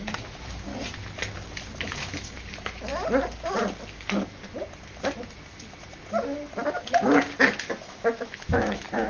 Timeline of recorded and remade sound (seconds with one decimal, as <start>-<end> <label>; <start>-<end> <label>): 0.0-0.7 remade; 0.7-1.8 recorded; 1.8-2.9 remade; 2.9-7.7 recorded; 7.7-9.1 remade